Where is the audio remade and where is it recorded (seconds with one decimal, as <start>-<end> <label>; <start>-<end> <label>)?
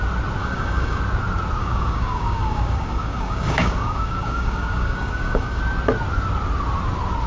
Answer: 0.0-0.4 recorded; 0.4-1.0 remade; 1.0-1.6 recorded; 1.6-5.6 remade; 5.6-7.3 recorded